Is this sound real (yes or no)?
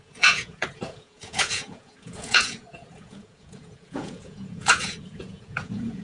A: no